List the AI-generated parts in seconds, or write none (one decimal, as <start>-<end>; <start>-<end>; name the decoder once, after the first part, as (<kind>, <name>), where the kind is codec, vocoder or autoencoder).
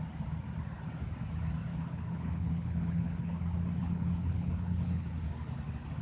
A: 1.7-3.3 (codec, HILCodec); 3.8-5.1